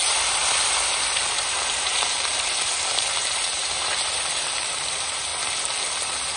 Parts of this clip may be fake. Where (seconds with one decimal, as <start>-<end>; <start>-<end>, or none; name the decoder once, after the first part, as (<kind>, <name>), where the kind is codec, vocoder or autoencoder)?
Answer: 0.0-5.3 (vocoder, BigVGAN v2); 6.0-6.4